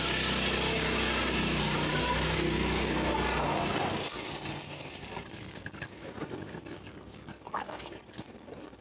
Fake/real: real